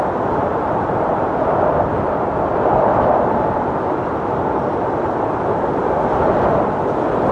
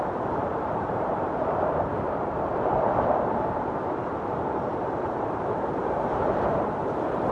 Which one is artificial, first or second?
second